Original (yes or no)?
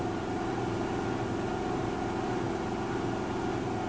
yes